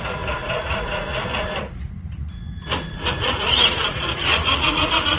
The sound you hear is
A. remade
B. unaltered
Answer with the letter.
A